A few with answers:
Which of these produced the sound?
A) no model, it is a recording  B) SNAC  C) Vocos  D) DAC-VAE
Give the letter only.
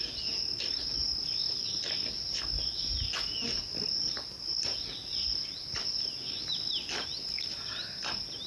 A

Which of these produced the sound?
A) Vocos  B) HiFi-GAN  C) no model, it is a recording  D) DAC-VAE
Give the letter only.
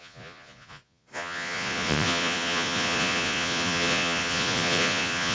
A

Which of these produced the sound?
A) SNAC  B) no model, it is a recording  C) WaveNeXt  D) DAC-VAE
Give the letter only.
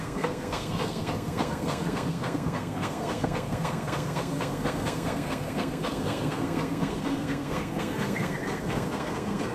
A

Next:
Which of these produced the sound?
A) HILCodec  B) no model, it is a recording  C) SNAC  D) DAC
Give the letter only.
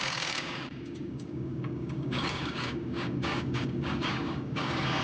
D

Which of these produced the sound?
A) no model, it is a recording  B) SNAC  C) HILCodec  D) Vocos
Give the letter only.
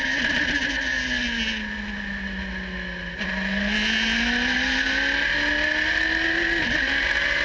A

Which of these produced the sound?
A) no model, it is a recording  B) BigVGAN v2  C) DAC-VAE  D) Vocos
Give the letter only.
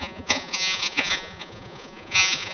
D